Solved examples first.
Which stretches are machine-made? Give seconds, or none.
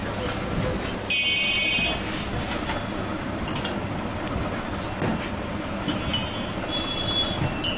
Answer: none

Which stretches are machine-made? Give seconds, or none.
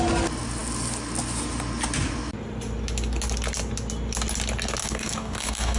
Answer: 4.8-5.8 (codec, DAC)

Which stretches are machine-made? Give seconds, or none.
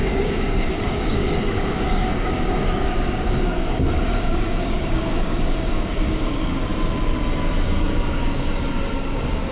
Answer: 0.0-6.7 (codec, DAC); 7.6-9.5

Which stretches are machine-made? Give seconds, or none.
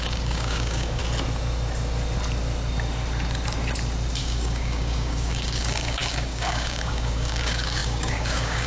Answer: 0.0-1.0 (codec, DAC); 4.2-8.7